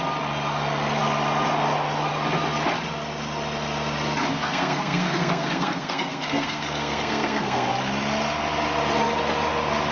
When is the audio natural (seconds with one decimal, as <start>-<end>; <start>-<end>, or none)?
0.0-4.3; 7.7-9.9